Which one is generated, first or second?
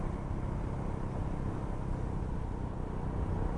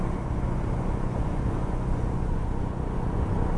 second